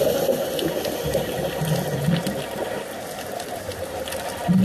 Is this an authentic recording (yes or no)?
yes